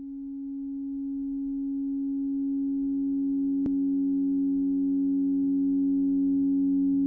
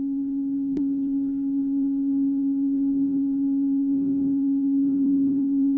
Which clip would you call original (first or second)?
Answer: first